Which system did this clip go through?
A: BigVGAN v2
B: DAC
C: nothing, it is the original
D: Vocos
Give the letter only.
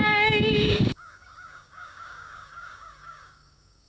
B